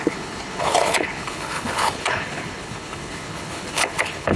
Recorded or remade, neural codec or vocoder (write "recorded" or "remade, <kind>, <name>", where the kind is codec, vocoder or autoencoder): remade, codec, HILCodec